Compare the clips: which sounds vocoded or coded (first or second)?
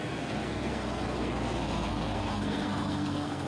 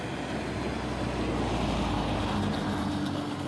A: first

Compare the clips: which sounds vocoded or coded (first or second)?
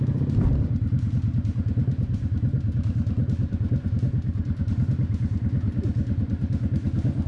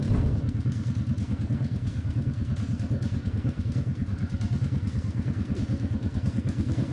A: second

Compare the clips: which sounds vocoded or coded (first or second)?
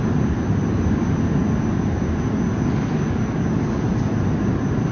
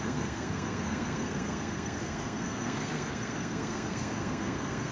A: second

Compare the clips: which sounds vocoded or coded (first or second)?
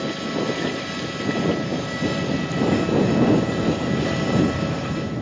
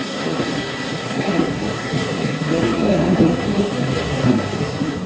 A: second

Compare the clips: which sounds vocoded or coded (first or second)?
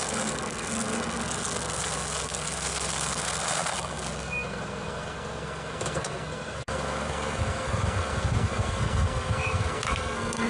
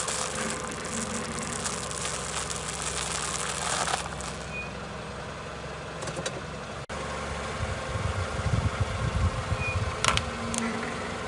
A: first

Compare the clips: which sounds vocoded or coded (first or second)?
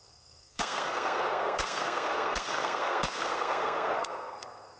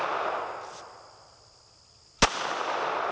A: first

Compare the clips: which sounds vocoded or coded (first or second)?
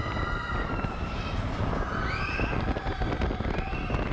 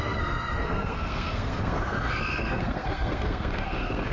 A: second